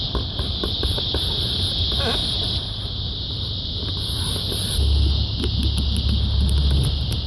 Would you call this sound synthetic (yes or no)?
no